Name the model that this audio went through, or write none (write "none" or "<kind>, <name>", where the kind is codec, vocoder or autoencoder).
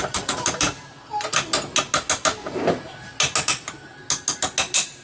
none